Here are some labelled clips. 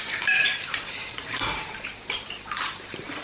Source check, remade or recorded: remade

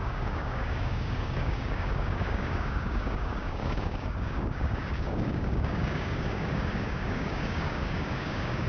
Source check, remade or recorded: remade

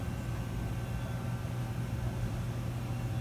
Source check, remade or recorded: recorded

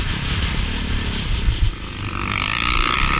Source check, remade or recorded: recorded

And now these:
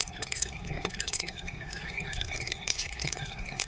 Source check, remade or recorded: remade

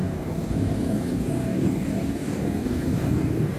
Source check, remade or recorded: remade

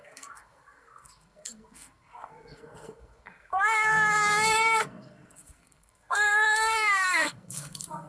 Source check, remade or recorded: remade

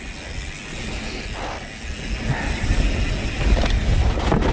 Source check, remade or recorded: recorded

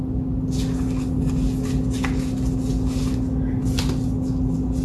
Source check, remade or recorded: recorded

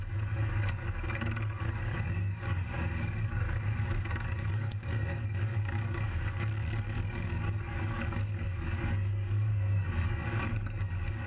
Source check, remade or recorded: remade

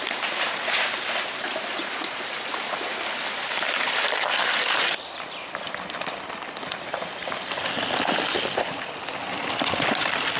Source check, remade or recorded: remade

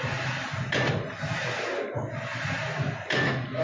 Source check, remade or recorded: recorded